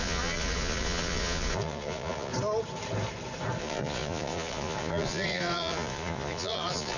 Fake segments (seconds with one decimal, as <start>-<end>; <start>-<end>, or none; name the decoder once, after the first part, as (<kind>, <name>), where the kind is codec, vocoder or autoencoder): 0.0-2.3 (vocoder, Vocos); 3.6-7.0